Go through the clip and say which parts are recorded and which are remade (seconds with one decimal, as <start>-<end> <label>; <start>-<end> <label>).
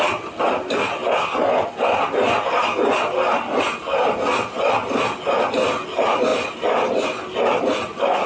0.0-8.3 recorded